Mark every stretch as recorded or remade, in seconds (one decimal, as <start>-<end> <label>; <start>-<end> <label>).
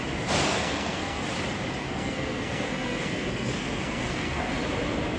0.0-0.5 recorded; 0.5-1.2 remade; 1.2-1.8 recorded; 1.8-4.5 remade; 4.5-5.2 recorded